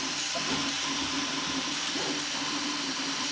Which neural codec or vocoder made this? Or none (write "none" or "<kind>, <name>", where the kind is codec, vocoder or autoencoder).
none